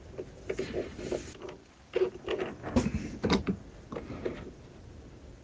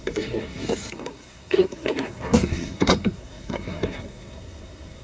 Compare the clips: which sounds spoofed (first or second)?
second